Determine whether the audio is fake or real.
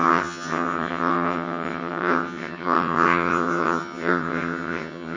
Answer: fake